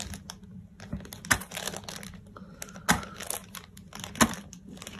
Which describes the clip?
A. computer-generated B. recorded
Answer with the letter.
B